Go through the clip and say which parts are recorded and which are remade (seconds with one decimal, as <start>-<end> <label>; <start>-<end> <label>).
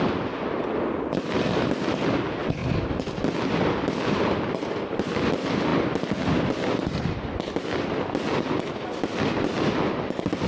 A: 0.0-10.5 recorded